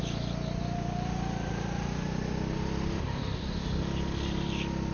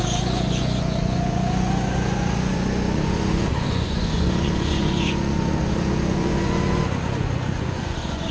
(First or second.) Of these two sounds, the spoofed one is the second